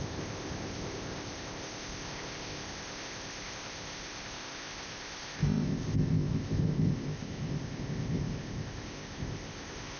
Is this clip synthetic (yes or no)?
yes